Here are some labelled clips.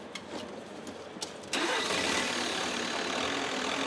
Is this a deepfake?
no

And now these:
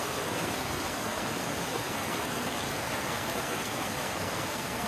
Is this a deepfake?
yes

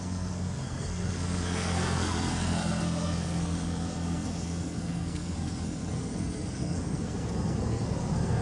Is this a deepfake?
yes